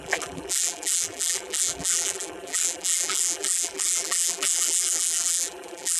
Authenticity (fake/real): fake